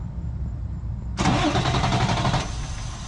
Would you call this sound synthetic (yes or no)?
no